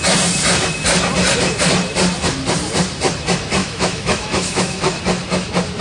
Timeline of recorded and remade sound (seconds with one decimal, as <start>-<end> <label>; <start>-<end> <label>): 0.0-3.6 recorded; 3.6-5.0 remade; 5.0-5.8 recorded